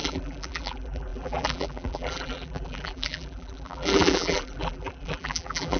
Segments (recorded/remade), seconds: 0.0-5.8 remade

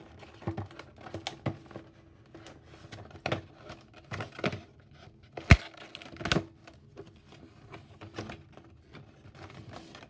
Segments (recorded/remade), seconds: 0.0-10.1 recorded

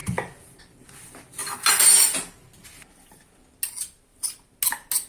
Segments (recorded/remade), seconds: 0.0-5.1 recorded

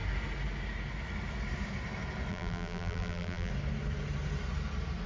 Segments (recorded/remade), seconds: 0.0-2.3 recorded; 2.3-3.5 remade; 3.5-5.1 recorded